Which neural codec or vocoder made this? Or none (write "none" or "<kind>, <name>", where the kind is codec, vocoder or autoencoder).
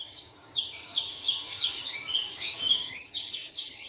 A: codec, DAC